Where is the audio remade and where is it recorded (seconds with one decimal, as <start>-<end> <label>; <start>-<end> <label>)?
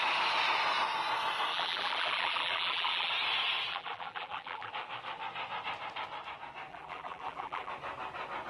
0.0-1.5 recorded; 1.5-3.1 remade; 3.1-3.7 recorded; 3.7-4.7 remade; 4.7-6.7 recorded; 6.7-7.7 remade; 7.7-8.5 recorded